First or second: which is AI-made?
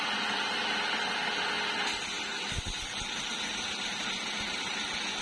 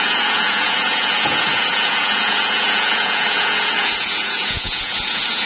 second